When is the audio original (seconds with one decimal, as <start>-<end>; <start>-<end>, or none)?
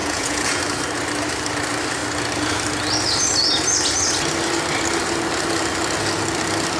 0.6-6.8